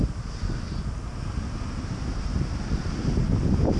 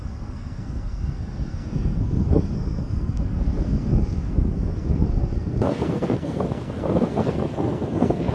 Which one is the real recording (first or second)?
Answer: first